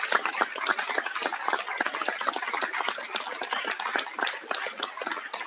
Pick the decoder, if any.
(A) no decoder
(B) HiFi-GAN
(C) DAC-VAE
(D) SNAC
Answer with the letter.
A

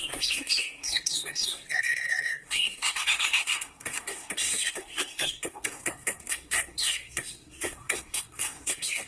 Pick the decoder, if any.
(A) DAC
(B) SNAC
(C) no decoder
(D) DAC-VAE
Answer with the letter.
B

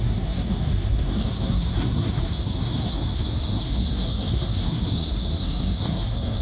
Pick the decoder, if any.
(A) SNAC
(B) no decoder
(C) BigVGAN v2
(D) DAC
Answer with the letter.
A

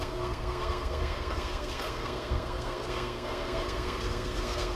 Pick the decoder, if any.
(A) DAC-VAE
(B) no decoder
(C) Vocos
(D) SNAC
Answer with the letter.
D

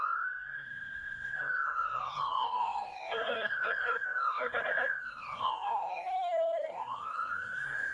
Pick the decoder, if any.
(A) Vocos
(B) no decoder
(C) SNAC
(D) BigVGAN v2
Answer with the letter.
C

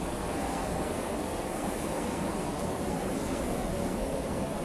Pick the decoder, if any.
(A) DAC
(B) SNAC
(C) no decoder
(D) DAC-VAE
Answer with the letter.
B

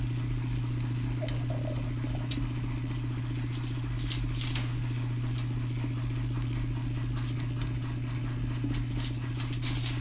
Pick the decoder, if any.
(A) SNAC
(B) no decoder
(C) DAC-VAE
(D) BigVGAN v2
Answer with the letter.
B